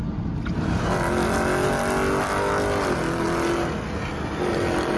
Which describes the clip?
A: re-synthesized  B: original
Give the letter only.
B